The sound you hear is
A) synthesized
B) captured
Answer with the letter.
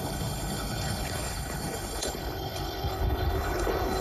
A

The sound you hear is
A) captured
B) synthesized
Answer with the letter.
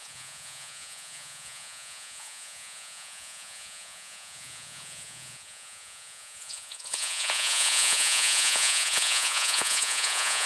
B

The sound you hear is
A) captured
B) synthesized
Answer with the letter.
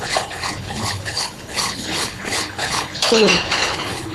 B